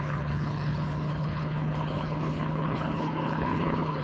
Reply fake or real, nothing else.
fake